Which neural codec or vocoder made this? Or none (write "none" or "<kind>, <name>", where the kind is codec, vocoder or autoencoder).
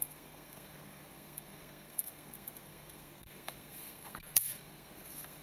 codec, SNAC